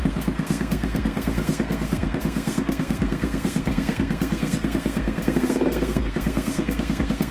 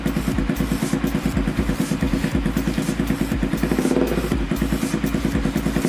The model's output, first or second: first